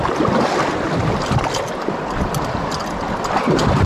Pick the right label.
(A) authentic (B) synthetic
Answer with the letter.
A